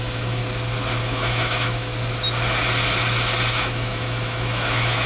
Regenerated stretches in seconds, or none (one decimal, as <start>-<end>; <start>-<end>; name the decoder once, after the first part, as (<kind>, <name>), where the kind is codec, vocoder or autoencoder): 0.0-0.4 (autoencoder, DAC-VAE); 1.0-1.9; 3.5-5.1